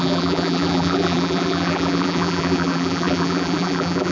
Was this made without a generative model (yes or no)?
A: no